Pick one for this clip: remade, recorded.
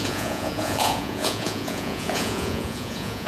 remade